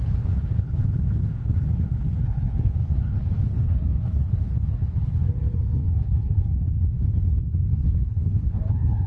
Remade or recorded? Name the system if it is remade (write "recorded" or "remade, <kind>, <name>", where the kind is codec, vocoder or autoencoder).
remade, codec, HILCodec